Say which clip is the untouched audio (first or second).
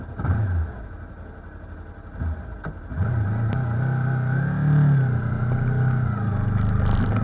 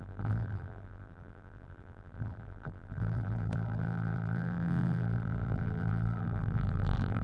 first